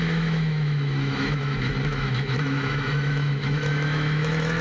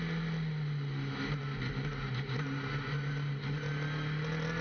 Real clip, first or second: second